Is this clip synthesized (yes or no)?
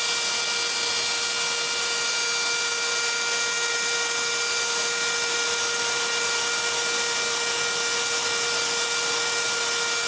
no